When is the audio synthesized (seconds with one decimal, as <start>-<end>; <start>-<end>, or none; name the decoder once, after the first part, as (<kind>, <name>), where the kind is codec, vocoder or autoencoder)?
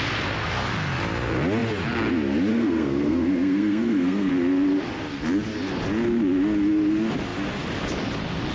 2.5-4.3 (codec, SNAC)